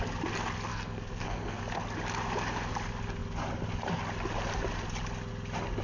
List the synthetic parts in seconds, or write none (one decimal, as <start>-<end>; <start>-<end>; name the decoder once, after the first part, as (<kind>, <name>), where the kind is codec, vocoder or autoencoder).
0.7-1.6 (codec, SNAC)